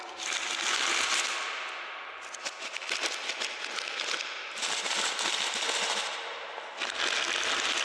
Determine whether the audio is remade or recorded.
recorded